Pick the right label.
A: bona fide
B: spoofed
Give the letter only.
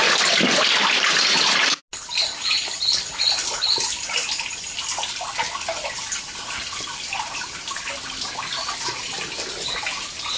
A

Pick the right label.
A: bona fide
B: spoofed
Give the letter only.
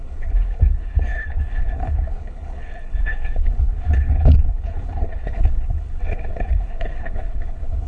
B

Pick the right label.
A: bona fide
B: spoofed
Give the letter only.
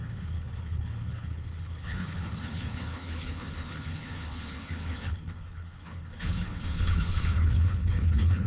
B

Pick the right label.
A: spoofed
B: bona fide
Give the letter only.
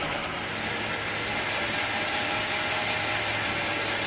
B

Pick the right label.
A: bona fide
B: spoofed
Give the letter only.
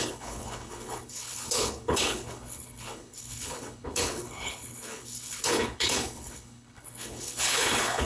B